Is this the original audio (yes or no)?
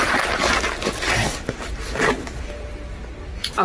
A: yes